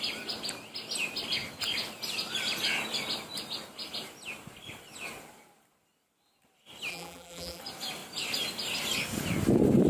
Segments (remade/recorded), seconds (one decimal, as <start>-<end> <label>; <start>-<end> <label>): 0.0-6.9 recorded; 6.9-7.6 remade; 7.6-9.9 recorded